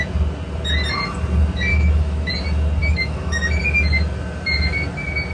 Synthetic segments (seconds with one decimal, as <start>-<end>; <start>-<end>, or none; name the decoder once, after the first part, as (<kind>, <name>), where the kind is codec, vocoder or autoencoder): 1.7-2.3 (autoencoder, DAC-VAE); 2.8-3.6